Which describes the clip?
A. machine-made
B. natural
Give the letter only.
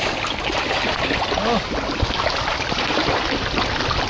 B